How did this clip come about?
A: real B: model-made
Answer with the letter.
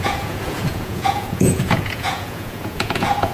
B